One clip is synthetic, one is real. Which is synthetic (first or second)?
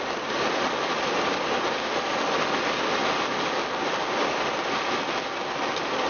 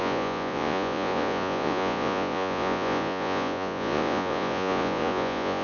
second